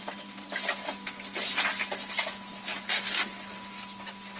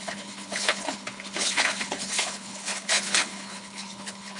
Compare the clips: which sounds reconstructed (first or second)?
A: second